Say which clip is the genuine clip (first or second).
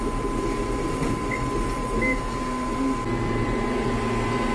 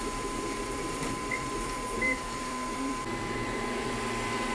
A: first